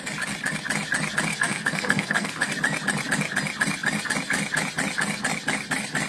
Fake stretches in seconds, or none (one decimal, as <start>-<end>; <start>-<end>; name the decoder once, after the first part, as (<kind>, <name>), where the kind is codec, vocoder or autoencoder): 1.3-2.5 (codec, SNAC)